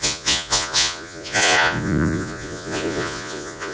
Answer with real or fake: fake